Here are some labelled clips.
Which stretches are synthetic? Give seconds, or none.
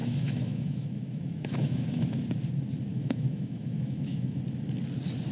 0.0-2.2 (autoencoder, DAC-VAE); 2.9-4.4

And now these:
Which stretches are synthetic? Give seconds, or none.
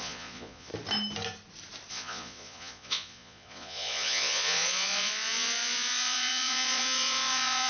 0.0-0.7 (vocoder, Vocos); 1.9-7.7